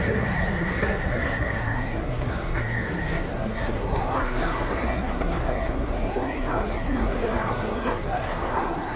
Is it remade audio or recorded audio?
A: remade